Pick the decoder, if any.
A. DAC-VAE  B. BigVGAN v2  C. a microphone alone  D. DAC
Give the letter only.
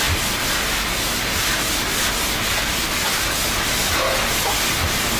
C